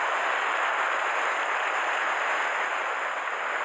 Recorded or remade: recorded